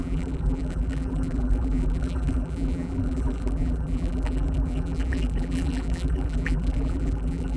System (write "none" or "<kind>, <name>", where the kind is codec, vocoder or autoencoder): vocoder, BigVGAN v2